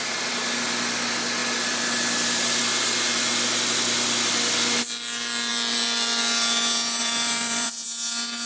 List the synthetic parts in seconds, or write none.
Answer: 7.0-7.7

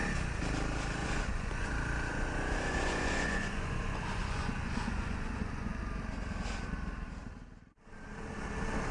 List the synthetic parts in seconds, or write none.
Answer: 1.0-1.7; 2.1-5.8

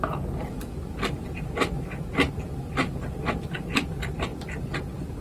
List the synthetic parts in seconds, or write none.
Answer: none

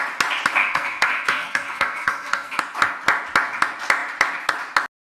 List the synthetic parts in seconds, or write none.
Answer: 0.6-2.6

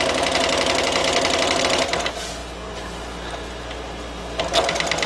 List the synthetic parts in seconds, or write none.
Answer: 1.0-1.6

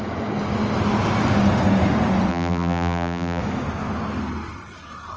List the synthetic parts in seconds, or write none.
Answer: 2.3-3.4

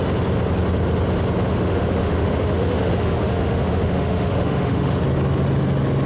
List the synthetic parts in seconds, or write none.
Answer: 1.5-5.0